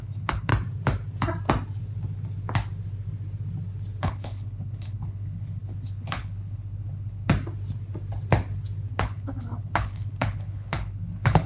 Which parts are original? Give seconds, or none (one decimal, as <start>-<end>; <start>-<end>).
0.5-4.0; 7.3-8.9